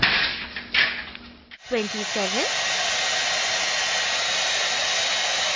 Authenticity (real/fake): real